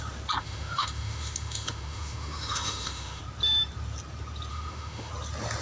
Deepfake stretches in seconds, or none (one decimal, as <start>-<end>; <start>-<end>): 0.4-3.2; 4.5-5.1